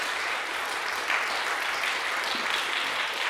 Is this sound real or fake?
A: fake